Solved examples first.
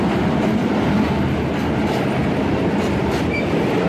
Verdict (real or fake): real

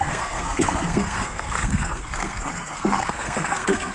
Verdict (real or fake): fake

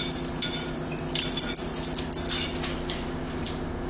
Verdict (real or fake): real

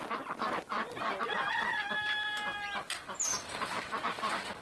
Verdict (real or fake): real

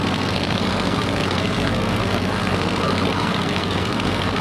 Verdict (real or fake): fake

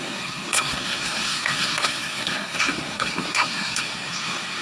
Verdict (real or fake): fake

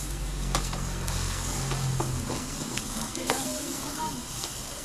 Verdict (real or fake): fake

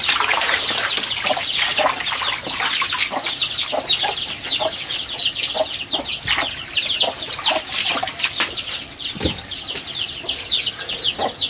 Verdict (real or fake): real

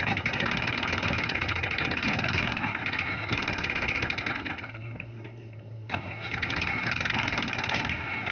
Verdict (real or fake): fake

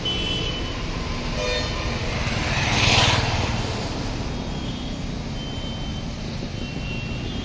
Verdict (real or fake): real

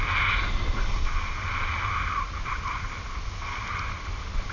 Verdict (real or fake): real